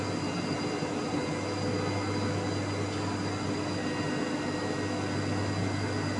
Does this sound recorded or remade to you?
recorded